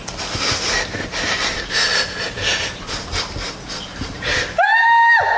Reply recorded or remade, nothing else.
recorded